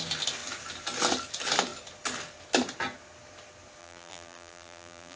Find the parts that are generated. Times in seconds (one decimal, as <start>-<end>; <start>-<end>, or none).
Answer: 3.8-5.2